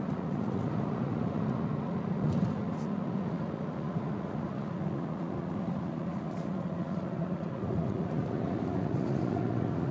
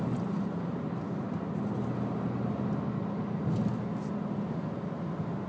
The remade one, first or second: first